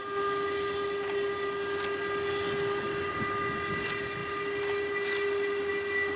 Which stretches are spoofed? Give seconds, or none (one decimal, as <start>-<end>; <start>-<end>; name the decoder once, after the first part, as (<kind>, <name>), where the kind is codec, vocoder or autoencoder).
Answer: none